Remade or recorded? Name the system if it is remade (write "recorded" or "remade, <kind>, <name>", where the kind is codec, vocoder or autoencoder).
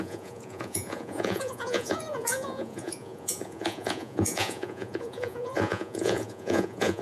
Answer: remade, vocoder, Vocos